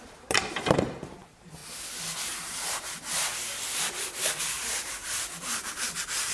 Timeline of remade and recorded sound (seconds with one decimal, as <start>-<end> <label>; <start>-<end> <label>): 0.0-1.6 remade; 1.6-4.4 recorded; 4.4-6.3 remade